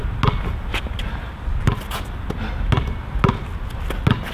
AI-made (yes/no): no